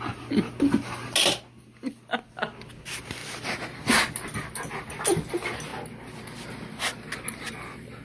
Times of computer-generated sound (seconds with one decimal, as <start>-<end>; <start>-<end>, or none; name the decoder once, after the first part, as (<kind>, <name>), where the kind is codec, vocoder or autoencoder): none

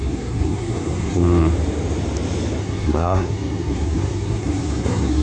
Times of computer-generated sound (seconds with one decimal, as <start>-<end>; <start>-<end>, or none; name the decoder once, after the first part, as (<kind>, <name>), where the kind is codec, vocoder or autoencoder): 0.0-1.2 (codec, SNAC); 2.6-5.2